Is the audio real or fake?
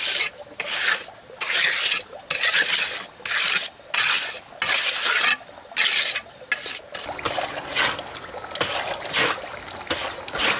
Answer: real